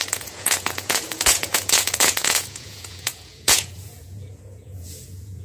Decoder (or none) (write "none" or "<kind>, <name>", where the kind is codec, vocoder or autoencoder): vocoder, Vocos